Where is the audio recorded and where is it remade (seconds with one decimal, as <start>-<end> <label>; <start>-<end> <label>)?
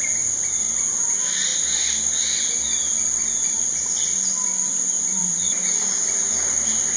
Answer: 0.0-5.2 recorded; 5.2-5.7 remade; 5.7-7.0 recorded